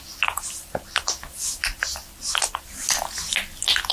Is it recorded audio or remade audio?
recorded